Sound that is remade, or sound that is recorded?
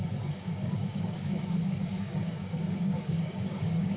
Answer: remade